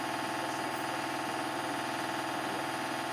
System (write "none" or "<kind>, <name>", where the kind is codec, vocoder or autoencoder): none